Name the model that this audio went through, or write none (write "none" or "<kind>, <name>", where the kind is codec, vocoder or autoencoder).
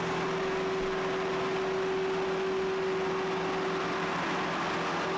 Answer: none